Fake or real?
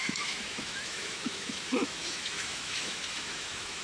fake